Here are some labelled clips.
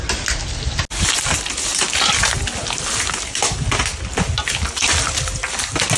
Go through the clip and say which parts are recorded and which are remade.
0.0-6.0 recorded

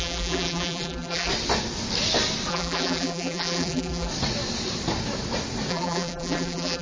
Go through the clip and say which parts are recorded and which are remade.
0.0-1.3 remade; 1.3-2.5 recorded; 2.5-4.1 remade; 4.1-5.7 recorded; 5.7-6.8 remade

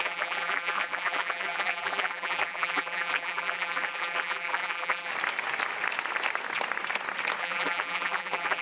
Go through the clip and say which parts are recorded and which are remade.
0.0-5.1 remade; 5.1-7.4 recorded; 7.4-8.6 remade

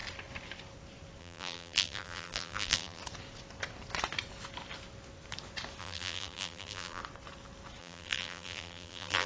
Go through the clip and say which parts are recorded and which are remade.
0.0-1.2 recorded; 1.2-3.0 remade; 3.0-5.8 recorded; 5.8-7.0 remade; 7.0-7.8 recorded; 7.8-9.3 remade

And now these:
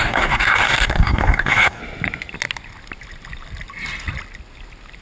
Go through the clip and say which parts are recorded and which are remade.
0.0-1.8 remade; 1.8-5.0 recorded

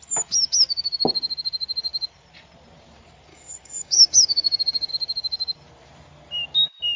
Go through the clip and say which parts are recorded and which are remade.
0.0-3.3 recorded; 3.3-4.9 remade; 4.9-7.0 recorded